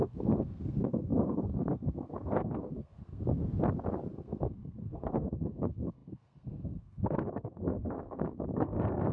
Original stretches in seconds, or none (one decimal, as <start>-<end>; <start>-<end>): 3.4-4.1